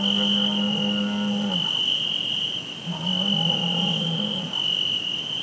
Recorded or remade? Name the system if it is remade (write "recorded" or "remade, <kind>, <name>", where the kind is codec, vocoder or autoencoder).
recorded